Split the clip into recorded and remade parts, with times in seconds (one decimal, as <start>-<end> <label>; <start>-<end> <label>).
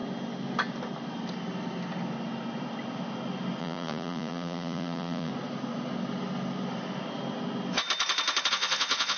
0.0-3.6 recorded; 3.6-5.3 remade; 5.3-8.5 recorded; 8.5-9.2 remade